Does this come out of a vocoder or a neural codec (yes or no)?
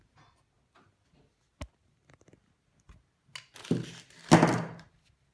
no